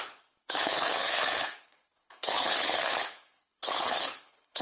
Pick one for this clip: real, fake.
fake